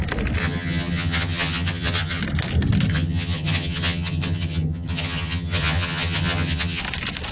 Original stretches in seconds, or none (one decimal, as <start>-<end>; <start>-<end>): 0.0-0.4; 2.2-2.9; 6.8-7.3